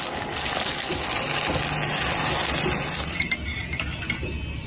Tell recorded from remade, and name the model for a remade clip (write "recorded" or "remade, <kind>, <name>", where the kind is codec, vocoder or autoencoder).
recorded